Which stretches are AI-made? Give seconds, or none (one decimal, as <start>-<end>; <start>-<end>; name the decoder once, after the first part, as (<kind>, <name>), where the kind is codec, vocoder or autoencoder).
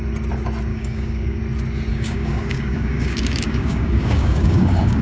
0.7-1.4 (codec, DAC); 1.9-5.0